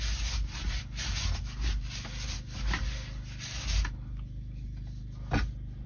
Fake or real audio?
real